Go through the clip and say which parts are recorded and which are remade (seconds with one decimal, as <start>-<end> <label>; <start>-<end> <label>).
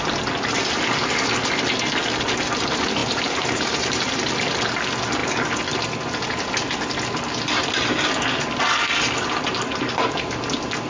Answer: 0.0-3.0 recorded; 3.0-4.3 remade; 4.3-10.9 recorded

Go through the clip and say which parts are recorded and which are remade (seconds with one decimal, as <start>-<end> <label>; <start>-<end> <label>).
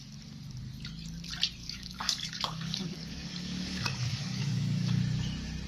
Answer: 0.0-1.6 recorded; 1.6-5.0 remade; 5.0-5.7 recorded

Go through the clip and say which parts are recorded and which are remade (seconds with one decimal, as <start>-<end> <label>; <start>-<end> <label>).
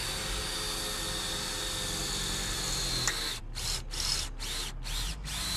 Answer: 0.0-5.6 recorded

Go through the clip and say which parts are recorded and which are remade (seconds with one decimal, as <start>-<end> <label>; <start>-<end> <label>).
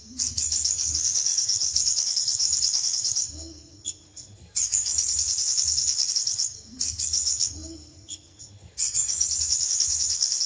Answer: 0.0-10.5 remade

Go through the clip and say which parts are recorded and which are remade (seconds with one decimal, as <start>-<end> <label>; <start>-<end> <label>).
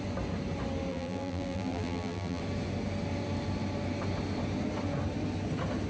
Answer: 0.0-0.9 recorded; 0.9-2.4 remade; 2.4-5.9 recorded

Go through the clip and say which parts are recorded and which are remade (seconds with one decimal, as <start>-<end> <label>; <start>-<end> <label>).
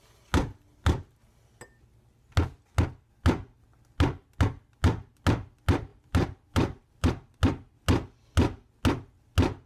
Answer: 0.0-5.9 recorded; 5.9-7.1 remade; 7.1-9.7 recorded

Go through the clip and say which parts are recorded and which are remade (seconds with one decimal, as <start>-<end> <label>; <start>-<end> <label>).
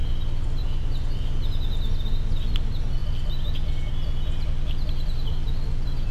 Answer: 0.0-6.1 recorded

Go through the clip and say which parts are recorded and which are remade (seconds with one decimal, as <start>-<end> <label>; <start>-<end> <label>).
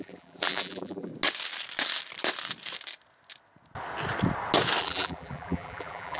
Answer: 0.0-1.1 remade; 1.1-4.8 recorded; 4.8-6.2 remade